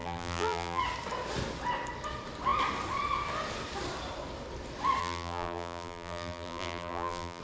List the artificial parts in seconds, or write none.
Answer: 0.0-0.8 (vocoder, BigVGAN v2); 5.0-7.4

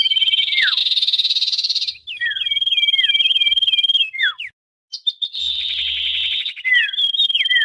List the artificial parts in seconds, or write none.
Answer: none

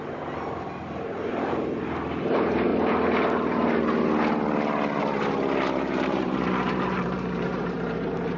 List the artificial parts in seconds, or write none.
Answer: 0.0-2.7 (vocoder, BigVGAN v2); 5.0-8.4

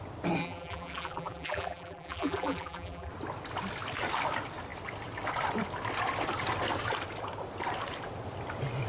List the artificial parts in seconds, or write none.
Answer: 0.4-3.1 (vocoder, BigVGAN v2)

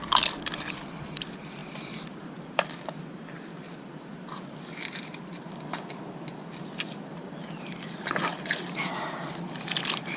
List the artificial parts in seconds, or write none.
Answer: 0.0-8.3 (vocoder, BigVGAN v2); 8.9-10.2

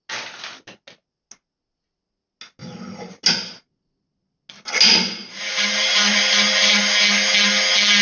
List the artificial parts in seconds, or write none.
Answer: 2.6-3.2 (vocoder, BigVGAN v2); 5.2-6.8

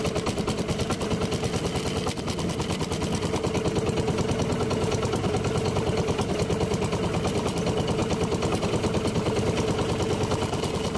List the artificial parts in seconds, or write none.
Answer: none